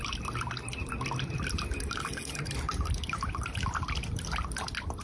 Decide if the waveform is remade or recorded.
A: recorded